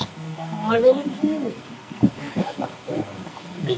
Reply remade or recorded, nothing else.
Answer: remade